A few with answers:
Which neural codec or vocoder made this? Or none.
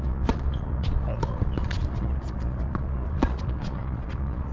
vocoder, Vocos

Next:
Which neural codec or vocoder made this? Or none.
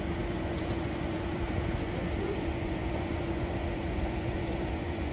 vocoder, Vocos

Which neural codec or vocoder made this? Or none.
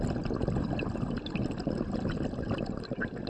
none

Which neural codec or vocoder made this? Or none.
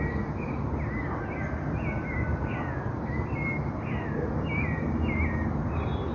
none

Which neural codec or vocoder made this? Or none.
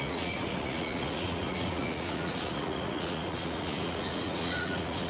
vocoder, Vocos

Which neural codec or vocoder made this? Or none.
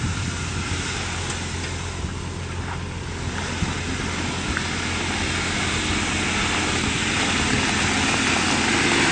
none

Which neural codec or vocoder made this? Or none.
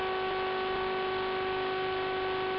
none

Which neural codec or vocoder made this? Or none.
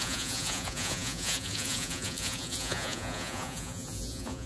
vocoder, Vocos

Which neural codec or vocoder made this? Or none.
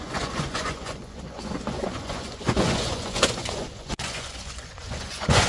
vocoder, Vocos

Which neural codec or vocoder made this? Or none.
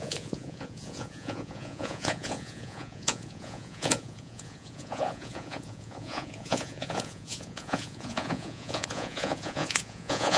vocoder, Vocos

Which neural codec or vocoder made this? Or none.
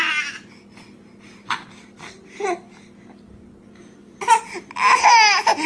none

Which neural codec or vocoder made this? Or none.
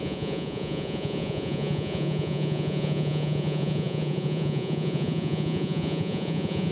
vocoder, Vocos